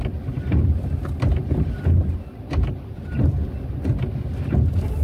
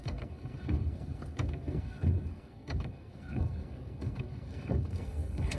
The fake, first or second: second